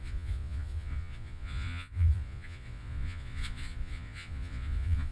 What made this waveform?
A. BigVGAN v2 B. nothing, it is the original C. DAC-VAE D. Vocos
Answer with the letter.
D